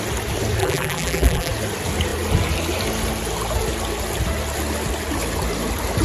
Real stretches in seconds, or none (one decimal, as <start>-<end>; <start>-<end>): 0.0-0.6; 1.5-6.0